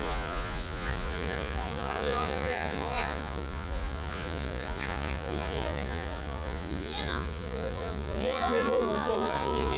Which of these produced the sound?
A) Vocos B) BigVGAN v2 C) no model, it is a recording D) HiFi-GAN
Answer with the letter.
A